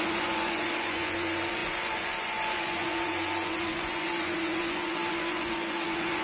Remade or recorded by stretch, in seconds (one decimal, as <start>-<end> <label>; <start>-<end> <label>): 0.0-6.2 remade